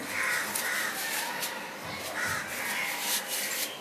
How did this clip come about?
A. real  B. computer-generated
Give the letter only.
A